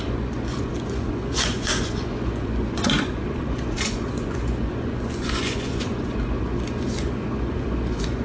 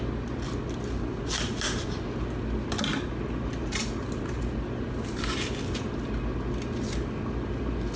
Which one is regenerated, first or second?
first